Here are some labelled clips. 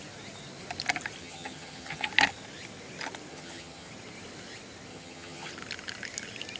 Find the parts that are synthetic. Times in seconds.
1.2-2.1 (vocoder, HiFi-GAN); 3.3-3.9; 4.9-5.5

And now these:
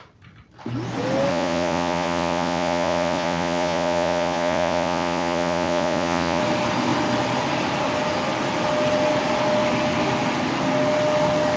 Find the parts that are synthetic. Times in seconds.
1.3-6.4 (vocoder, Vocos)

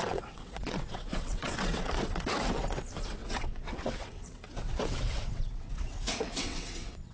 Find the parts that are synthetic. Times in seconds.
0.0-7.1 (vocoder, WaveNeXt)

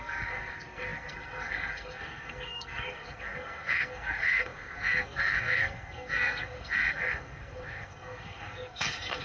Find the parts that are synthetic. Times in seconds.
0.0-9.2 (codec, SNAC)